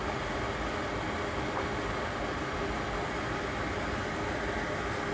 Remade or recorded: recorded